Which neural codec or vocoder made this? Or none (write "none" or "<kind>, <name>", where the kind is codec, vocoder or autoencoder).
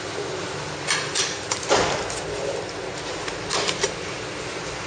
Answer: none